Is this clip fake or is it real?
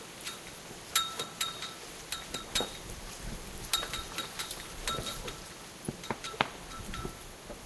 fake